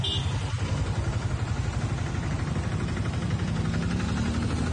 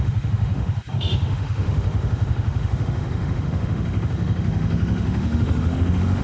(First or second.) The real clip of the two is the first